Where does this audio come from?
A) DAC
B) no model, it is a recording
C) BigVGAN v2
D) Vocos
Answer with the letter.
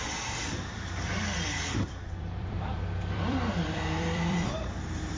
C